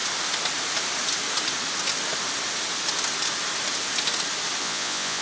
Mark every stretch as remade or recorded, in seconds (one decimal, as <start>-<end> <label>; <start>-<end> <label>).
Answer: 0.0-4.6 recorded; 4.6-5.2 remade